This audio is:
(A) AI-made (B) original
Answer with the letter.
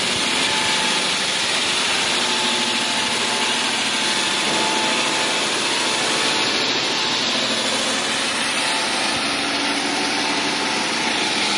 B